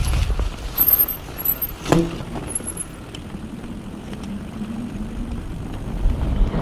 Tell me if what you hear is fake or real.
real